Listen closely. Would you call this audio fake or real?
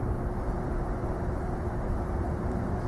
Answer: fake